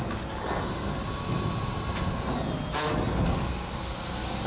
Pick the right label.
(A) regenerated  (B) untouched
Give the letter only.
B